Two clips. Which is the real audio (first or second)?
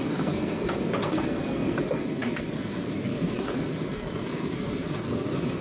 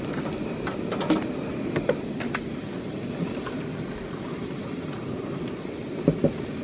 second